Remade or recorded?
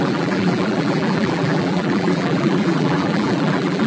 remade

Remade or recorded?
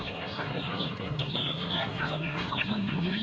remade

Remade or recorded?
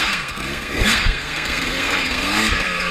remade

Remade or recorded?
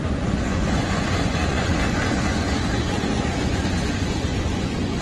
remade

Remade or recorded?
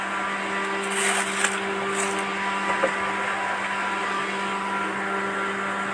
recorded